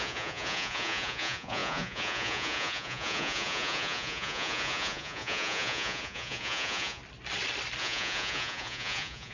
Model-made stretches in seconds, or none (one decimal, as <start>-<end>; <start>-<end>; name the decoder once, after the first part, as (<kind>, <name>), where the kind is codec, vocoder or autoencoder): 0.0-7.0 (vocoder, Vocos); 7.8-9.3